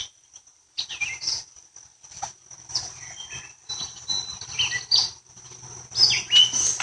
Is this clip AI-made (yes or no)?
no